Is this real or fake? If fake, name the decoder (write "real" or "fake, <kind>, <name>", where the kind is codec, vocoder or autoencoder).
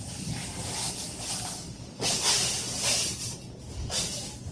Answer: real